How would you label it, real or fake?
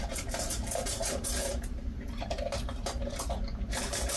fake